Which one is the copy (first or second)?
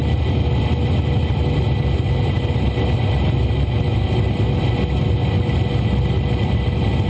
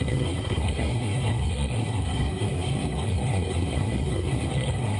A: second